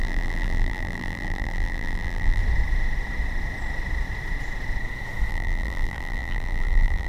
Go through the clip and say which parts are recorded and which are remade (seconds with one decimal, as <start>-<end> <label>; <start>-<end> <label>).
0.0-2.4 remade; 2.4-5.3 recorded; 5.3-7.1 remade